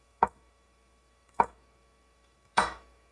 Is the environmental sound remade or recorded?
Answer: remade